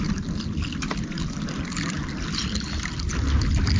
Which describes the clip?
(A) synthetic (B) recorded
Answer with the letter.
B